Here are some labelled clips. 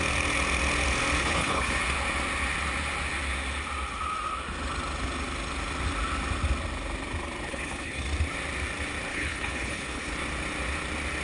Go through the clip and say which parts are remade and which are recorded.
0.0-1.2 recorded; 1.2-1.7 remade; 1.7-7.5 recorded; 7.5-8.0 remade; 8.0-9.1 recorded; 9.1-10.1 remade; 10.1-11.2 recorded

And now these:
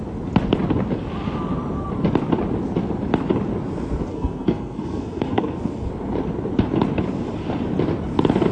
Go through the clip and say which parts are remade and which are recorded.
0.0-4.1 recorded; 4.1-5.9 remade; 5.9-8.5 recorded